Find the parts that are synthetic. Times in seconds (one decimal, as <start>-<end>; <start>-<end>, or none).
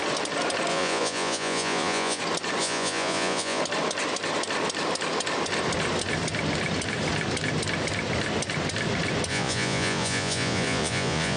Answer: 0.7-2.2; 2.6-3.6; 9.3-11.4